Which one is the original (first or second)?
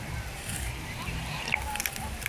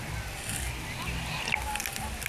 second